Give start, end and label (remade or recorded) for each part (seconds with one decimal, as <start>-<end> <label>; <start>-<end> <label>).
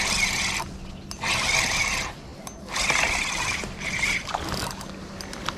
0.0-5.6 recorded